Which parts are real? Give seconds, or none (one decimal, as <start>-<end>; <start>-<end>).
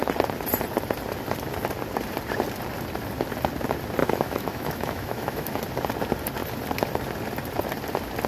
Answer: 0.0-4.0; 5.5-8.3